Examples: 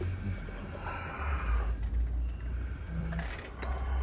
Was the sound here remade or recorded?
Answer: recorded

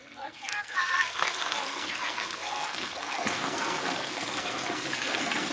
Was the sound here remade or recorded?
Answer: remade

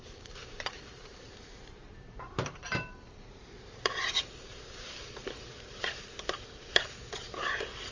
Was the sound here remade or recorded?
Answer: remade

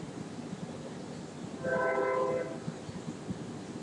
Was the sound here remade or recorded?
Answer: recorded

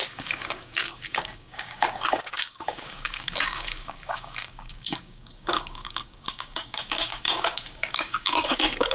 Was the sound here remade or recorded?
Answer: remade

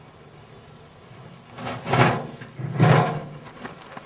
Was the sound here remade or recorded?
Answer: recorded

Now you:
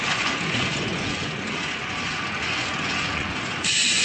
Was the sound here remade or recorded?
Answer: remade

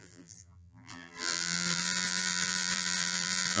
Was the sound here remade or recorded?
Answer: remade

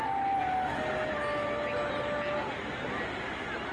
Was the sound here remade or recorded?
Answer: recorded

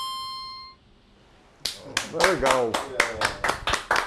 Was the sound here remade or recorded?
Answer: recorded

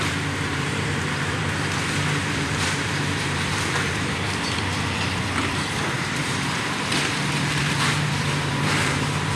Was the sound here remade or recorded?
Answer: remade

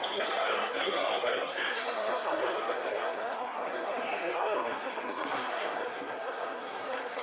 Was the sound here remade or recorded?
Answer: remade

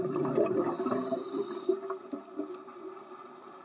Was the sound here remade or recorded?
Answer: recorded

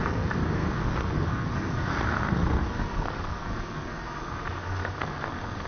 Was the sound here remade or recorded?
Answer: remade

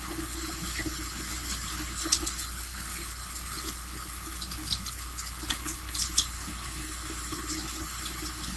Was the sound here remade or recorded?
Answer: remade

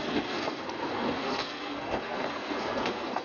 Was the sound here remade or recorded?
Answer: remade